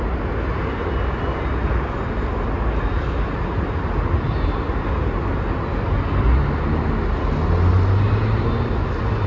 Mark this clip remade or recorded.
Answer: recorded